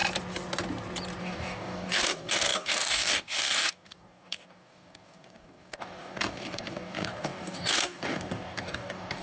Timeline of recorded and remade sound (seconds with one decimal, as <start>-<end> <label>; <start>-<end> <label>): 0.0-1.2 recorded; 1.2-9.2 remade